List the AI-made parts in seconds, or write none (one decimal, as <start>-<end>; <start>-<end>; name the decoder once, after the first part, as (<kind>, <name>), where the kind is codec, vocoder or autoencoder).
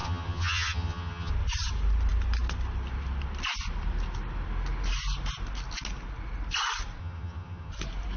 0.0-1.3 (vocoder, HiFi-GAN); 7.0-7.7